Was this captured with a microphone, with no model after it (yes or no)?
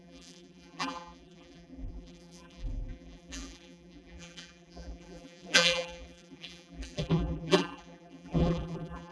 no